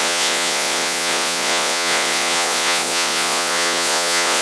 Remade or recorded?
remade